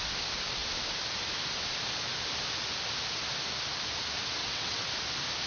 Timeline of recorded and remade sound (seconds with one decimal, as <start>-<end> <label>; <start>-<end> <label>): 0.0-4.4 recorded; 4.4-4.9 remade; 4.9-5.5 recorded